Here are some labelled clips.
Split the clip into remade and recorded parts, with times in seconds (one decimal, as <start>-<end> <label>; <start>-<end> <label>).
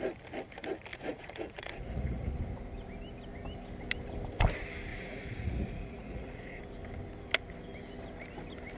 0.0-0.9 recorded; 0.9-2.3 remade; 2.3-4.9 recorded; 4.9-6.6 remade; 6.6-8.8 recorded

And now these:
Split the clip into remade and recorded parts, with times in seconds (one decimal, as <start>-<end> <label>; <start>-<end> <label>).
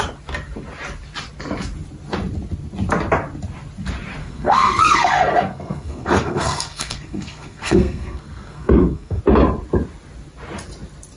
0.0-4.2 recorded; 4.2-9.2 remade; 9.2-11.2 recorded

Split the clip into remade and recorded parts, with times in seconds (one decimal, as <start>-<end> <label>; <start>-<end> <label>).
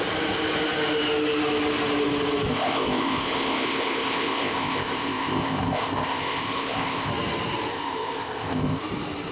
0.0-2.5 recorded; 2.5-7.1 remade; 7.1-7.7 recorded; 7.7-8.8 remade; 8.8-9.3 recorded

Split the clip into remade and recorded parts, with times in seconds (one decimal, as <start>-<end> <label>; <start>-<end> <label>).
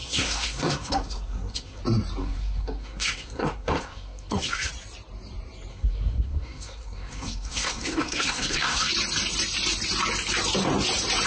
0.0-1.8 remade; 1.8-2.2 recorded; 2.2-4.7 remade; 4.7-5.7 recorded; 5.7-8.9 remade; 8.9-11.3 recorded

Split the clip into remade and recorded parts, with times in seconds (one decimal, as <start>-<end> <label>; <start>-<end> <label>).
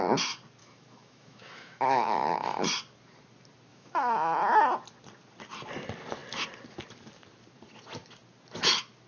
0.0-0.6 recorded; 0.6-2.6 remade; 2.6-3.7 recorded; 3.7-4.4 remade; 4.4-9.1 recorded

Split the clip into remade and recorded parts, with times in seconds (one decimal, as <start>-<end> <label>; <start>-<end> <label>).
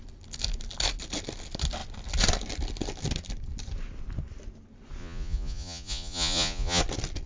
0.0-5.0 recorded; 5.0-6.8 remade; 6.8-7.3 recorded